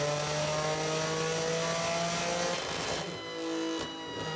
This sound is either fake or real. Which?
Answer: real